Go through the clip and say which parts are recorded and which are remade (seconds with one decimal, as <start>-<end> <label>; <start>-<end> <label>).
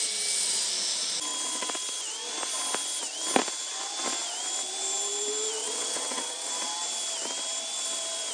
0.0-5.6 recorded; 5.6-6.5 remade; 6.5-8.3 recorded